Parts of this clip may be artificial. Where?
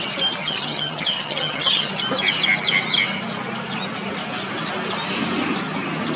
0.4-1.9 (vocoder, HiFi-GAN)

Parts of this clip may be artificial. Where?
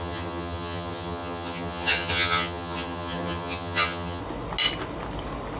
0.0-4.2 (vocoder, HiFi-GAN)